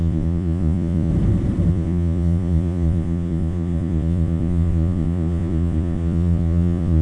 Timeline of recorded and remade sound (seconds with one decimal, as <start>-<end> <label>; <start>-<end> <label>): 0.0-1.1 remade; 1.1-1.7 recorded; 1.7-7.0 remade